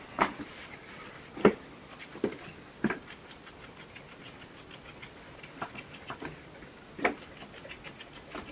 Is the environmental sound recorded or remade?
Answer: recorded